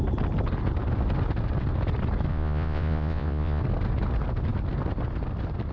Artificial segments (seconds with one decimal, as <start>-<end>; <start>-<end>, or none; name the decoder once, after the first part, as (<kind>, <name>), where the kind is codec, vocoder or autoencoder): 2.3-3.6 (vocoder, Vocos)

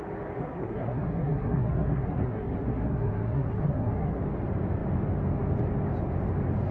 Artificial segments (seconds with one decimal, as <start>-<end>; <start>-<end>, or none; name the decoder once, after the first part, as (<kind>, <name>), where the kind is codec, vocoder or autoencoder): 0.4-4.2 (codec, SNAC)